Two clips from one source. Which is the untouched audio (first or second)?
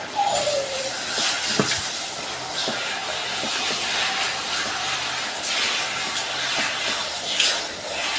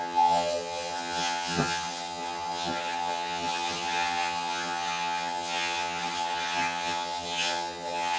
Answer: first